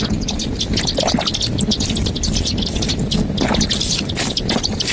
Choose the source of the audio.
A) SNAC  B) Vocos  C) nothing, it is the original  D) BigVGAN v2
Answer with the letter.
C